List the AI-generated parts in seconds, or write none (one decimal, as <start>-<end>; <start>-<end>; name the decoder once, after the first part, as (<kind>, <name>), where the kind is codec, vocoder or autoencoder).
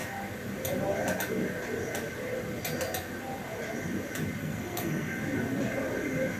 4.4-5.2 (codec, SNAC)